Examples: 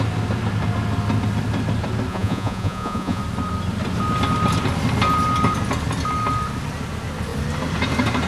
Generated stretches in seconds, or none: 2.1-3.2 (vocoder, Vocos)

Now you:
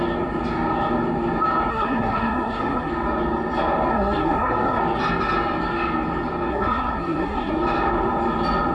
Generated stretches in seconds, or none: 1.7-2.9 (codec, SNAC); 3.9-4.8; 6.5-7.5

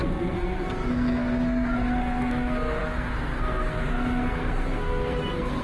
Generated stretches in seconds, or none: 0.0-5.6 (codec, SNAC)

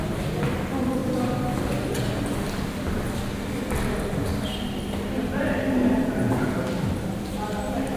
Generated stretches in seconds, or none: none

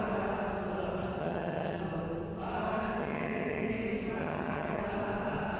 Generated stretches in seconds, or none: 1.2-1.8 (vocoder, HiFi-GAN); 3.0-3.7; 4.2-4.8

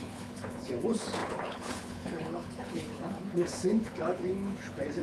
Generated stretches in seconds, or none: 0.0-5.0 (codec, HILCodec)